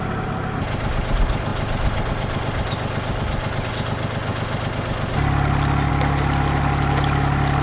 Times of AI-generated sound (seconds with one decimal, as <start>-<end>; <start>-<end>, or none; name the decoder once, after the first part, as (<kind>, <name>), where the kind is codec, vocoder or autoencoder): none